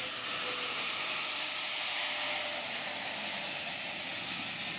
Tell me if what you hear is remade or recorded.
recorded